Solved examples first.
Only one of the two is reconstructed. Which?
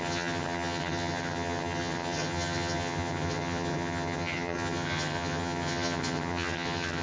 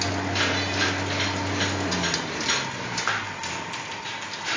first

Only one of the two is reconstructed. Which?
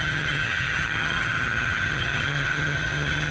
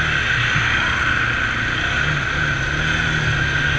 first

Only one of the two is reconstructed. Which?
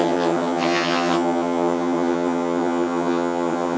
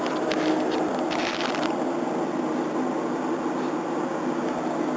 first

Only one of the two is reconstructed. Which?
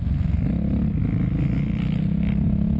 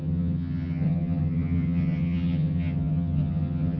second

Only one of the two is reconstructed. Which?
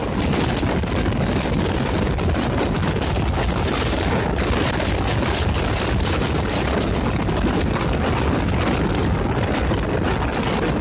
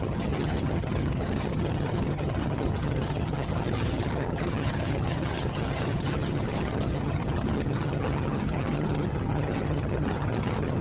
second